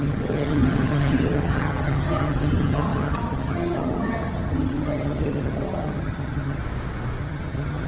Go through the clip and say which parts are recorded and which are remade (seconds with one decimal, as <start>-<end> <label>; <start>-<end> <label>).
0.0-6.6 remade; 6.6-7.2 recorded; 7.2-7.9 remade